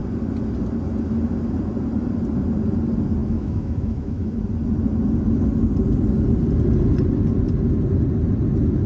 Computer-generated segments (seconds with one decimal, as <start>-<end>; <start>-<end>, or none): 3.2-4.4